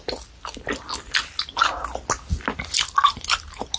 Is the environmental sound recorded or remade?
recorded